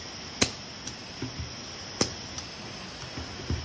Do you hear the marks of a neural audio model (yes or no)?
no